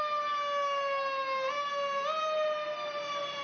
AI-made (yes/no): no